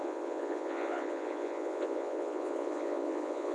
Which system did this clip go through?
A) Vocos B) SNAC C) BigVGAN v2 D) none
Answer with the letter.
A